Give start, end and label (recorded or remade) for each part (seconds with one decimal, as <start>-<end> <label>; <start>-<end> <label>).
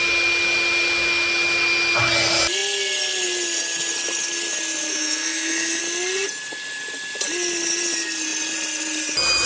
0.0-4.9 recorded; 4.9-5.8 remade; 5.8-9.5 recorded